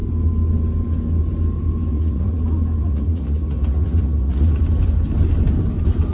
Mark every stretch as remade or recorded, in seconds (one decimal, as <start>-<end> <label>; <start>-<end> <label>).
0.0-1.9 recorded; 1.9-2.4 remade; 2.4-2.8 recorded; 2.8-4.6 remade; 4.6-6.1 recorded